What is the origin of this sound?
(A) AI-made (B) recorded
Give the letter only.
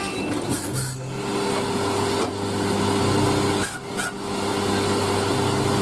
B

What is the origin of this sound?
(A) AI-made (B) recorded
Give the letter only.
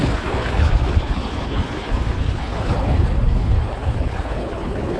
A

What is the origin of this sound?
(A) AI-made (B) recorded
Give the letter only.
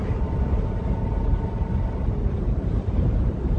B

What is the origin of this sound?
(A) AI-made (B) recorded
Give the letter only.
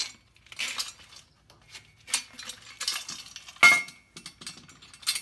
B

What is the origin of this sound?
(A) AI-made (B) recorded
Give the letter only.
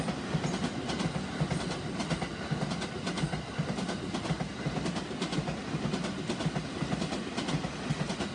B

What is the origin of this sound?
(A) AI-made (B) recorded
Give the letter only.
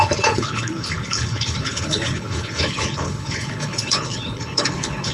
A